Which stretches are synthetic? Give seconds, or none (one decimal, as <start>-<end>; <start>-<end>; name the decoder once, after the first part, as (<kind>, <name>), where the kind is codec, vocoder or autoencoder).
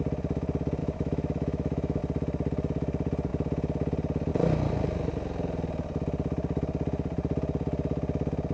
0.8-2.0 (autoencoder, DAC-VAE)